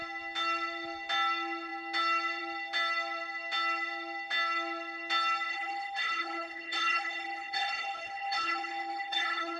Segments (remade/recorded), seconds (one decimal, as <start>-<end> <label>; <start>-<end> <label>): 0.0-5.5 recorded; 5.5-9.6 remade